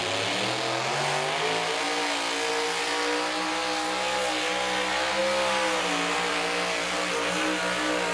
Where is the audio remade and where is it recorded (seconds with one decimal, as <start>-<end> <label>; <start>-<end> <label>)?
0.0-8.1 recorded